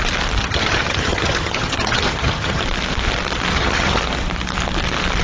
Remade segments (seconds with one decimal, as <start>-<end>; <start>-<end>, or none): 0.4-2.6; 3.5-4.0

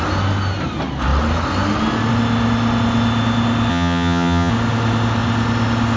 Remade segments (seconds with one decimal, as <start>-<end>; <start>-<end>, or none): 3.7-4.5

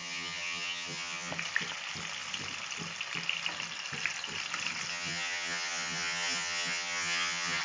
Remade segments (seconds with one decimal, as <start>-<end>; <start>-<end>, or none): 0.0-1.3; 4.9-7.6

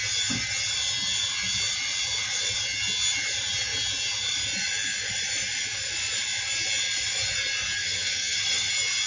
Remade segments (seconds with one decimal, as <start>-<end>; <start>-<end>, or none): 7.8-8.7

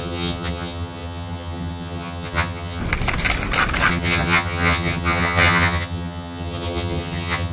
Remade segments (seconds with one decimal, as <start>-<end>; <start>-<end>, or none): 0.0-2.8; 3.9-7.5

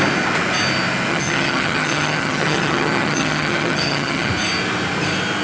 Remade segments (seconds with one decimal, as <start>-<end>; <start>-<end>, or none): 1.1-4.3

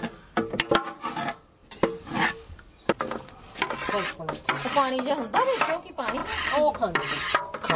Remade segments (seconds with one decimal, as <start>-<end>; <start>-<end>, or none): none

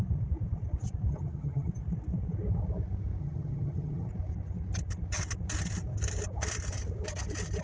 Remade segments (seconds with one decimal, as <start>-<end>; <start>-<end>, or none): 1.1-1.7; 3.2-4.1